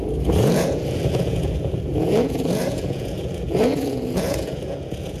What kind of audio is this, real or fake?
fake